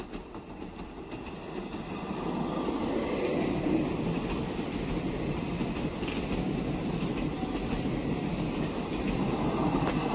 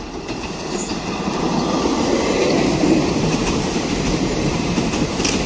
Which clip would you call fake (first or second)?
second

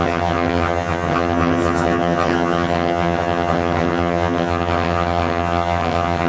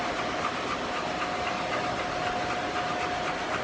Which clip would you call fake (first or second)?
first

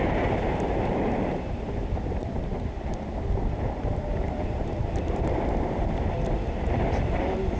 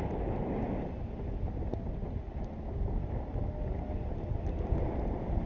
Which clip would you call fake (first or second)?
first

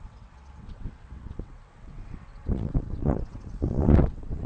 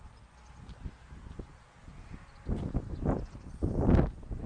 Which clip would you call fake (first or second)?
first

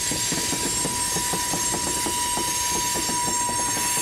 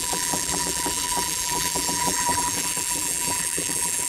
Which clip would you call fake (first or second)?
second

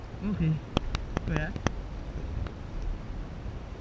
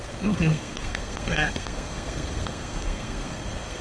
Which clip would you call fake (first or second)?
second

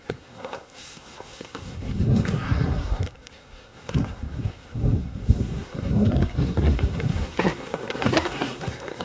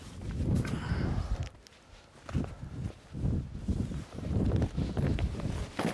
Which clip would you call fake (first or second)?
first